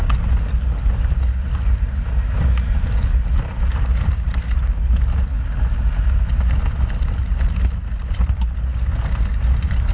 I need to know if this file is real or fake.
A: real